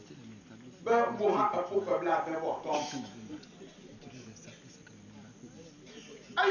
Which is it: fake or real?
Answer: real